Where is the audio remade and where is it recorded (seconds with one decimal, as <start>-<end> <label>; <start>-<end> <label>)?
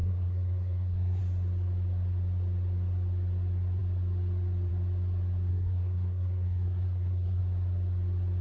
0.0-1.2 remade; 1.2-5.5 recorded; 5.5-7.4 remade; 7.4-8.4 recorded